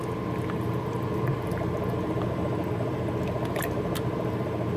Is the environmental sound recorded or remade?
recorded